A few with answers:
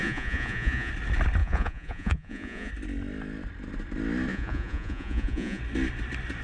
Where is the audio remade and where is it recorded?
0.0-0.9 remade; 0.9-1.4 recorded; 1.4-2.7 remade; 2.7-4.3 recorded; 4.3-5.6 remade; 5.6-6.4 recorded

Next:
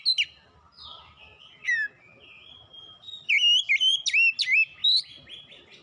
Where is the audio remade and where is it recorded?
0.0-5.8 recorded

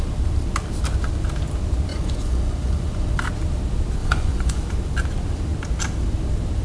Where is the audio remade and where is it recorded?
0.0-1.9 recorded; 1.9-3.1 remade; 3.1-4.0 recorded; 4.0-4.6 remade; 4.6-6.6 recorded

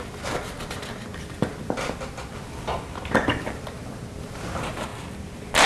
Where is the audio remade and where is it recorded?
0.0-5.7 recorded

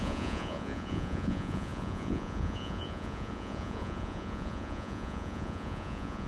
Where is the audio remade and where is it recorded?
0.0-6.3 remade